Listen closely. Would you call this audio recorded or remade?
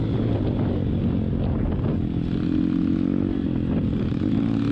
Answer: recorded